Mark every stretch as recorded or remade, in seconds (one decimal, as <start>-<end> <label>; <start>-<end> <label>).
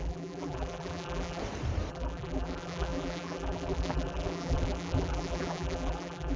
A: 0.0-1.4 remade; 1.4-1.9 recorded; 1.9-6.4 remade